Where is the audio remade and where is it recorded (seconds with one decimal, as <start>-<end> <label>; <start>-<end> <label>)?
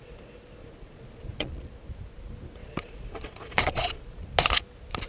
0.0-0.6 recorded; 0.6-1.7 remade; 1.7-2.6 recorded; 2.6-4.3 remade; 4.3-5.1 recorded